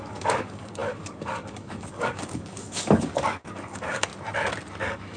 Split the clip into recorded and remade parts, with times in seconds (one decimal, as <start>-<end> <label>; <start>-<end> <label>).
0.0-4.1 remade; 4.1-4.8 recorded; 4.8-5.2 remade